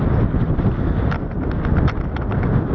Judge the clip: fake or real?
real